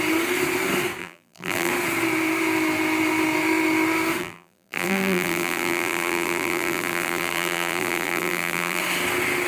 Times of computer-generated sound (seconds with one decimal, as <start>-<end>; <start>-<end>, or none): 1.0-1.7; 4.2-8.8